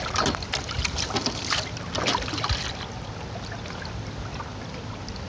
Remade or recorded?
recorded